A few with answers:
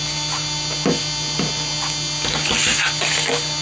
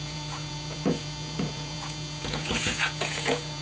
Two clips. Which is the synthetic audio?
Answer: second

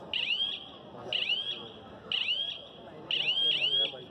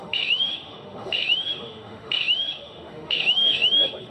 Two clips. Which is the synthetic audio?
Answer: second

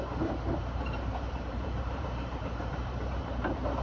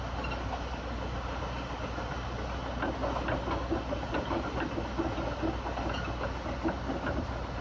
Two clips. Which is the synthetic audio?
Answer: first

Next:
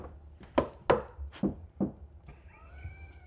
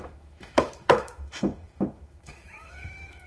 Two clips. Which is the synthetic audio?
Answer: second